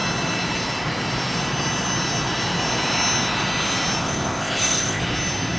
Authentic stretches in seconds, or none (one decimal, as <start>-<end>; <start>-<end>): 0.0-4.0; 5.0-5.6